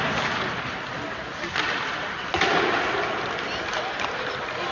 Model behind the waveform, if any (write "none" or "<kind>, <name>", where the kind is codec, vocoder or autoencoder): none